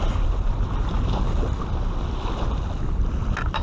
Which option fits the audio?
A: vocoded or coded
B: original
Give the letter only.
B